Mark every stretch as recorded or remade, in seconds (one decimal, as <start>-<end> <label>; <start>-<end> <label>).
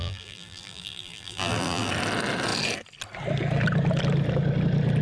0.0-1.9 remade; 1.9-5.0 recorded